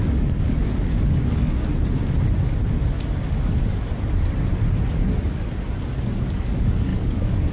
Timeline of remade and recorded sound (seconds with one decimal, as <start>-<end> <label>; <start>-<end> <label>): 0.0-1.7 remade; 1.7-6.2 recorded; 6.2-7.5 remade